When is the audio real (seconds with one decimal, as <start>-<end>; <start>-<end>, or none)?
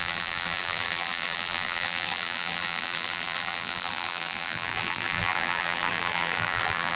none